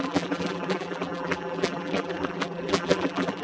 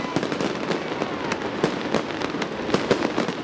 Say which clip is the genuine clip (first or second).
second